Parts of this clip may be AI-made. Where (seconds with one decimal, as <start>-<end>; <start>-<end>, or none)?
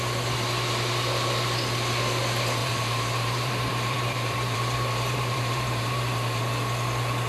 2.6-6.4